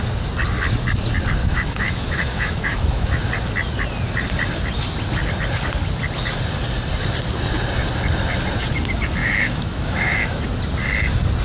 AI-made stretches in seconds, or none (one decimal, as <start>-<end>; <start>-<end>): 1.4-3.2; 9.2-10.4